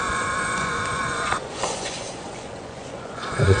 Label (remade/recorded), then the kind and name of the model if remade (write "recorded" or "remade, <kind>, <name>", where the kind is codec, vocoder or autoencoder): remade, vocoder, Vocos